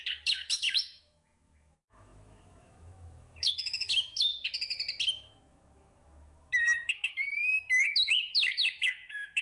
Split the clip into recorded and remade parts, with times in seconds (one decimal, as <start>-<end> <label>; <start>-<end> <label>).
0.0-4.3 remade; 4.3-5.1 recorded; 5.1-9.4 remade